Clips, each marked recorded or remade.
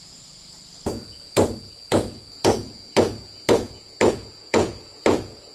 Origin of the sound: remade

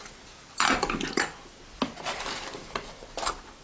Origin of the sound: recorded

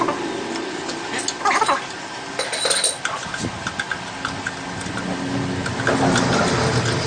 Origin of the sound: recorded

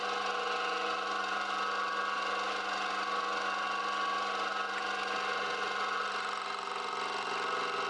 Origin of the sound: recorded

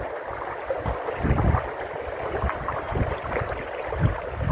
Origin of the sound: recorded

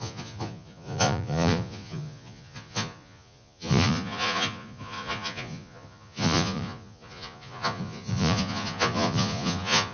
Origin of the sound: remade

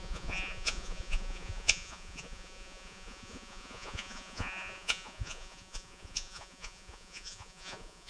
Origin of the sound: remade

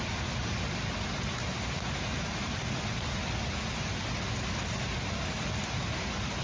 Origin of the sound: recorded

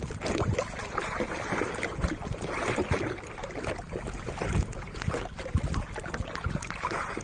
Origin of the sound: recorded